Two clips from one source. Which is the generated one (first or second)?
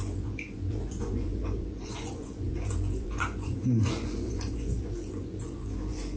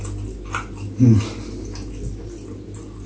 first